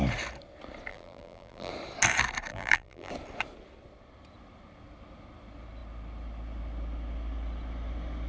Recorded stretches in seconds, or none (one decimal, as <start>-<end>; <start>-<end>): 0.0-0.9; 1.7-2.5; 3.1-8.3

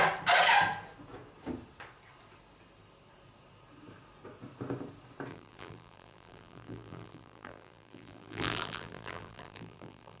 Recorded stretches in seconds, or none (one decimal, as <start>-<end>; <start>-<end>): 0.0-5.3

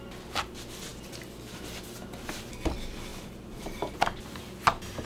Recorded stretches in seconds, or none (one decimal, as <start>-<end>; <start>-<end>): 0.0-5.1

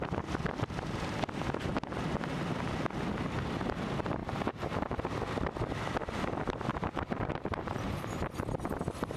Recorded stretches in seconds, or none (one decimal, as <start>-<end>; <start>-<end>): 0.0-4.2; 5.0-6.7; 8.4-9.2

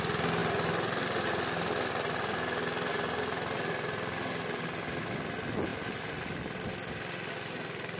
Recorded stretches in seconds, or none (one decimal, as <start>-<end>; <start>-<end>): 0.0-5.7; 6.4-8.0